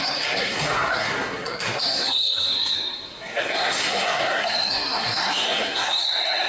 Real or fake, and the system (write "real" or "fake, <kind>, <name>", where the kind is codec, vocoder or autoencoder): fake, codec, SNAC